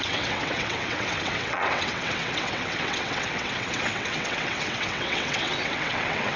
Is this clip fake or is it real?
fake